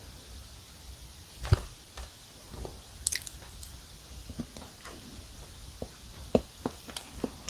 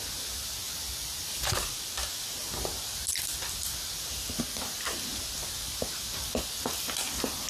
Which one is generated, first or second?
second